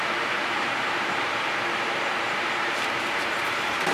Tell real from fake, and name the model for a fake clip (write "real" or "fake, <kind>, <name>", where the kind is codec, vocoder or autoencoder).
fake, vocoder, BigVGAN v2